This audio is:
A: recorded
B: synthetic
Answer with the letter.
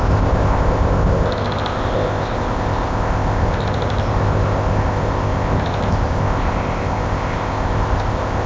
B